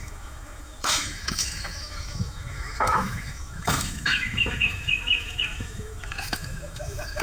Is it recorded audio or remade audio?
remade